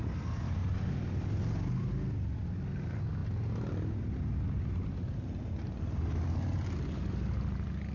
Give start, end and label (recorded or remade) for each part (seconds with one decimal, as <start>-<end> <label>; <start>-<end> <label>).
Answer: 0.0-7.9 recorded